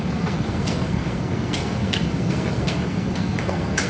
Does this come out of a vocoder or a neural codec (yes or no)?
yes